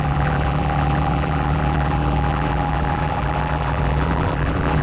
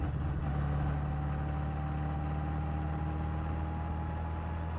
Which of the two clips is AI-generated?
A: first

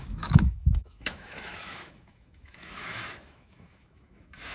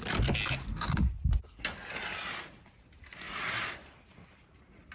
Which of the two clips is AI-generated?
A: first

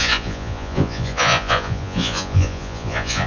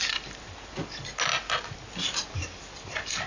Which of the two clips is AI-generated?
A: first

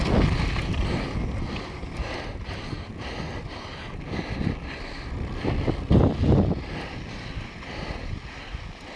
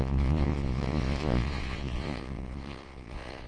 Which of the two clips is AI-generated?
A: second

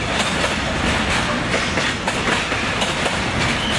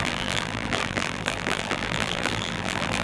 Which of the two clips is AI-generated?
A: second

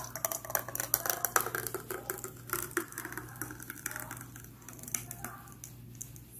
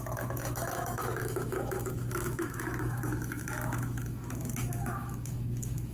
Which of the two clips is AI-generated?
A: second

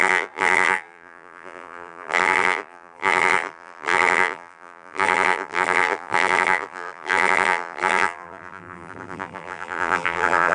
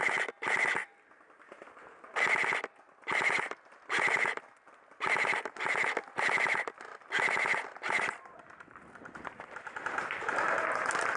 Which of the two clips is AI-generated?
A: first